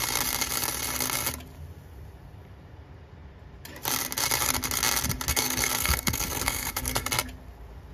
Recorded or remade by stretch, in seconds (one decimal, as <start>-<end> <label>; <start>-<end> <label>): 0.0-5.3 recorded; 5.3-7.1 remade; 7.1-7.9 recorded